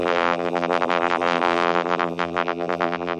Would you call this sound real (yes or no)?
no